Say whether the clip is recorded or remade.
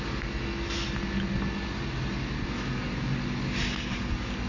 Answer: recorded